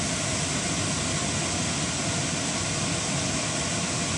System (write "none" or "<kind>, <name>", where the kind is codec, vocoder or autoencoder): none